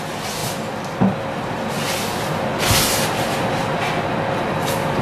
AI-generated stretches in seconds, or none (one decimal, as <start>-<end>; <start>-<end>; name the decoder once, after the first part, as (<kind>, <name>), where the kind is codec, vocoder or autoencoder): none